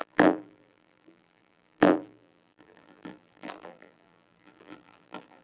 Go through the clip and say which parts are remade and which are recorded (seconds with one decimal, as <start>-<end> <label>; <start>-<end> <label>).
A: 0.0-5.4 remade